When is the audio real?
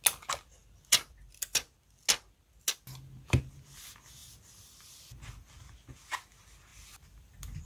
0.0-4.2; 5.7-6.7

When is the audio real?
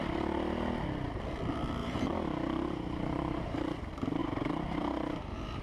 0.0-1.8; 3.8-4.2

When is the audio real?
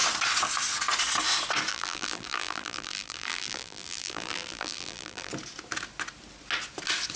0.0-1.7; 5.3-7.2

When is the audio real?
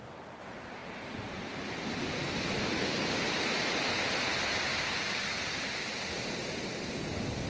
0.0-2.2; 3.6-4.3; 5.0-7.5